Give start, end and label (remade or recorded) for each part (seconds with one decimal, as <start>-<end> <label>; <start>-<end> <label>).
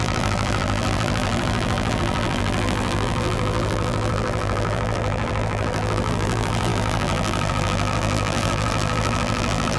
0.0-9.8 remade